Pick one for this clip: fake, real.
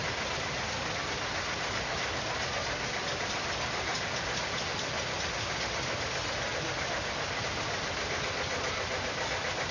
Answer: real